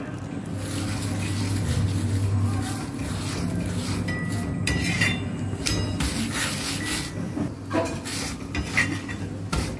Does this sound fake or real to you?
real